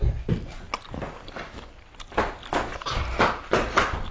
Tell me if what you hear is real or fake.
real